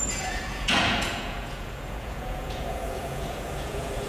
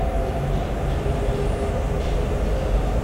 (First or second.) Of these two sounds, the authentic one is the second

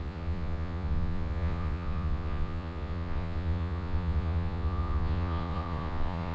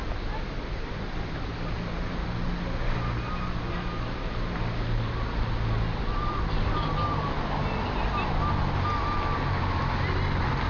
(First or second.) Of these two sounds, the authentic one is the second